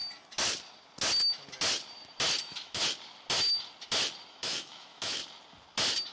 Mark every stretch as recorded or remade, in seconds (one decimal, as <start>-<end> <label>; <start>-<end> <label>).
0.0-2.4 recorded; 2.4-2.8 remade; 2.8-4.3 recorded; 4.3-5.2 remade; 5.2-6.1 recorded